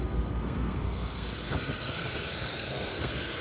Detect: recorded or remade remade